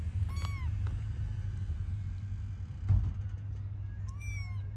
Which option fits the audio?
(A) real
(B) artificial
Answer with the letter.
A